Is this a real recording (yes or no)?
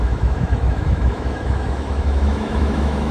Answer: no